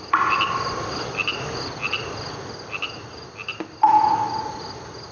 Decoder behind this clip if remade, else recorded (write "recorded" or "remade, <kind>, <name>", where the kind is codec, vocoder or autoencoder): recorded